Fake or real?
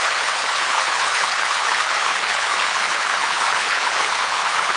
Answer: fake